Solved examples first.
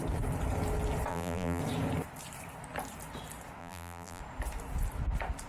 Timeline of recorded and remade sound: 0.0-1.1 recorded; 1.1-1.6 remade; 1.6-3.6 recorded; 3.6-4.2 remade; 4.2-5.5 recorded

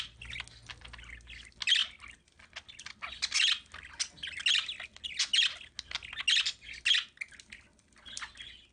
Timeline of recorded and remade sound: 0.0-8.7 recorded

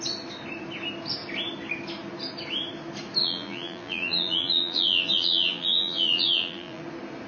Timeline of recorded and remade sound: 0.0-3.2 recorded; 3.2-6.8 remade; 6.8-7.3 recorded

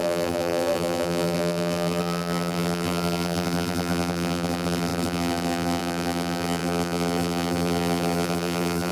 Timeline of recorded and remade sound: 0.0-8.9 remade

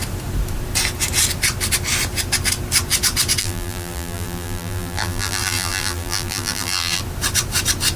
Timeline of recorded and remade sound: 0.0-3.4 recorded; 3.4-7.0 remade; 7.0-8.0 recorded

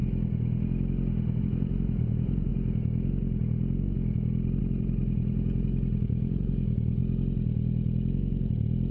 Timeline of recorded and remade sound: 0.0-1.4 recorded; 1.4-2.5 remade; 2.5-4.6 recorded; 4.6-7.0 remade; 7.0-8.9 recorded

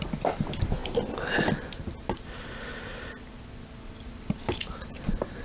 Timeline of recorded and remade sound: 0.0-0.8 remade; 0.8-4.0 recorded; 4.0-5.4 remade